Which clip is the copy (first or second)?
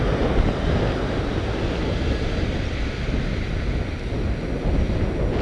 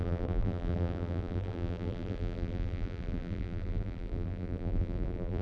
second